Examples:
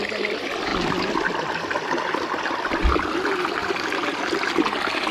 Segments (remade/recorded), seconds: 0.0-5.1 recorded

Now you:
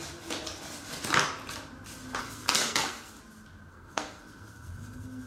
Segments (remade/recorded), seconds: 0.0-2.2 recorded; 2.2-3.2 remade; 3.2-3.7 recorded; 3.7-5.3 remade

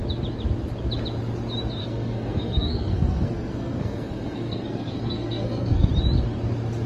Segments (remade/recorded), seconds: 0.0-1.8 recorded; 1.8-5.9 remade; 5.9-6.9 recorded

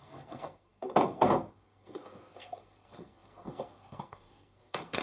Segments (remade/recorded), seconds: 0.0-5.0 remade

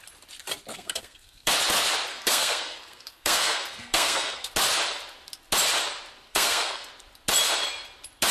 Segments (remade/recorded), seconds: 0.0-0.7 recorded; 0.7-1.5 remade; 1.5-2.1 recorded; 2.1-4.5 remade; 4.5-6.3 recorded; 6.3-6.9 remade; 6.9-8.3 recorded